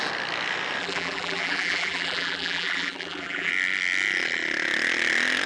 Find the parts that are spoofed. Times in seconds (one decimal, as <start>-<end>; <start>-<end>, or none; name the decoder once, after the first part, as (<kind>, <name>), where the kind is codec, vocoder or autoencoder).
0.8-3.5 (vocoder, BigVGAN v2)